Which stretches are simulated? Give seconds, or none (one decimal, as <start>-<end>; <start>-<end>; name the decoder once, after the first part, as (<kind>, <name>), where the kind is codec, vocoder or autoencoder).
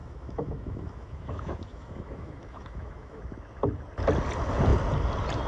0.0-3.2 (autoencoder, DAC-VAE)